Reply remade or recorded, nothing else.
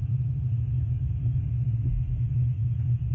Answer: remade